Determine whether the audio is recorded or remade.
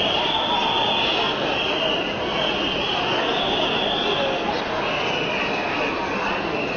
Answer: recorded